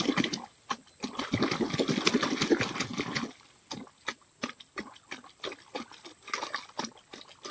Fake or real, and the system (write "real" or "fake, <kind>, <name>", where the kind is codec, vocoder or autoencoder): real